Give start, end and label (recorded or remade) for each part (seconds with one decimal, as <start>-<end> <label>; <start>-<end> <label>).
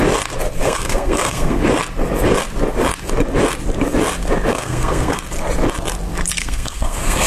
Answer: 0.0-0.6 recorded; 0.6-1.6 remade; 1.6-4.5 recorded; 4.5-5.2 remade; 5.2-6.4 recorded; 6.4-7.3 remade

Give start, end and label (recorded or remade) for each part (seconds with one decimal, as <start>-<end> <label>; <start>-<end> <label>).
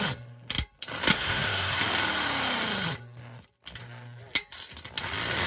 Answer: 0.0-1.1 recorded; 1.1-1.8 remade; 1.8-5.5 recorded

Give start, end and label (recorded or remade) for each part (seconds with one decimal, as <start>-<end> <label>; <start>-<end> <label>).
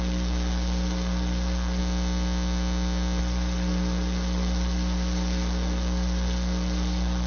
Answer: 0.0-1.8 remade; 1.8-3.2 recorded; 3.2-7.3 remade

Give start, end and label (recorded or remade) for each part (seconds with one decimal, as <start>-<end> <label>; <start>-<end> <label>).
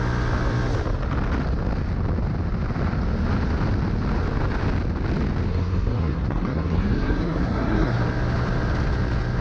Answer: 0.0-5.5 recorded; 5.5-8.0 remade; 8.0-9.4 recorded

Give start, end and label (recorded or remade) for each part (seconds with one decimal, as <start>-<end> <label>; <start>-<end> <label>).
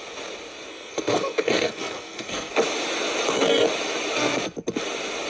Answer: 0.0-0.7 recorded; 0.7-2.5 remade; 2.5-5.3 recorded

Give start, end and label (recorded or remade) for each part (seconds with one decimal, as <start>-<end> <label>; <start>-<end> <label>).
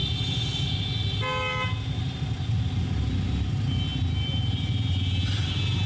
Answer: 0.0-5.9 recorded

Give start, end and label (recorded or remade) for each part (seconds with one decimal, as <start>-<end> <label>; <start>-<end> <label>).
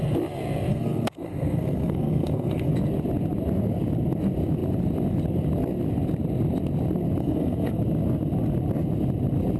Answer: 0.0-0.7 recorded; 0.7-2.7 remade; 2.7-7.2 recorded; 7.2-7.8 remade; 7.8-9.6 recorded